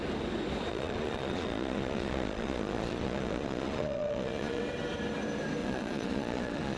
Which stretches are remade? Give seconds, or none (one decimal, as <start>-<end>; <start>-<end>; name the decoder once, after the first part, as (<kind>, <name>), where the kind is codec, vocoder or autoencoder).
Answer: 0.7-4.6 (vocoder, Vocos); 5.6-6.8